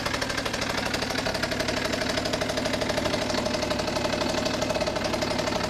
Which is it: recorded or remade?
recorded